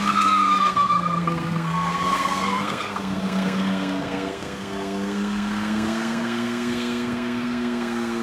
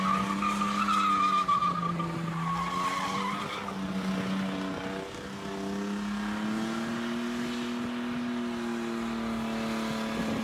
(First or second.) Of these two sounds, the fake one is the first